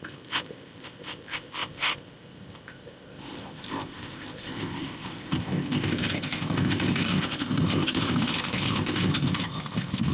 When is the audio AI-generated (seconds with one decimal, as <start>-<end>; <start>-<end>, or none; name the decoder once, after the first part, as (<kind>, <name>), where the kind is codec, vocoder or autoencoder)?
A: 0.0-10.1 (codec, ZipCodec)